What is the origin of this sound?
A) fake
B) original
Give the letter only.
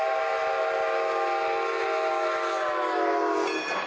B